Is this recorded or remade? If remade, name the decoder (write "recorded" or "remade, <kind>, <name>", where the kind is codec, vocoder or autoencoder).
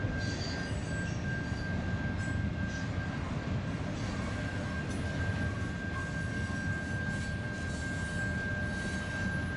recorded